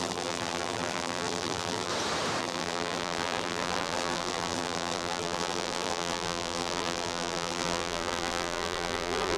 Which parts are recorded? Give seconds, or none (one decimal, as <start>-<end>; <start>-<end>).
1.9-2.4